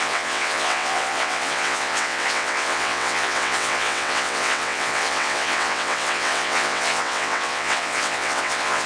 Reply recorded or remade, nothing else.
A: remade